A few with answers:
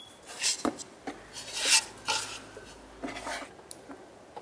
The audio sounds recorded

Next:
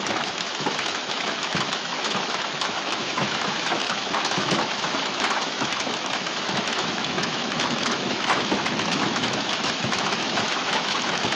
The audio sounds remade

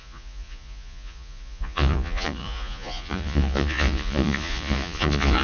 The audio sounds remade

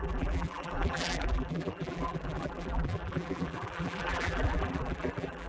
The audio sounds remade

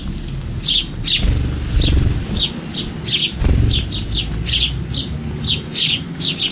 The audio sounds recorded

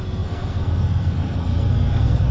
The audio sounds remade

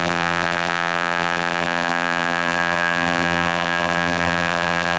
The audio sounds remade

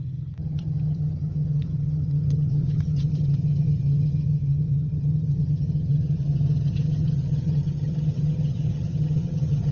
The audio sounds remade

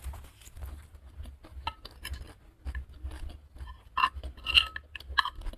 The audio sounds recorded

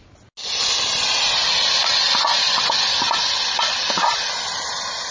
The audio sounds recorded